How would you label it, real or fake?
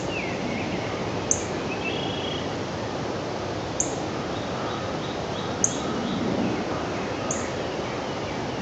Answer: real